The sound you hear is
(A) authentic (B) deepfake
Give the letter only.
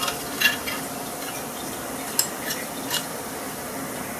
A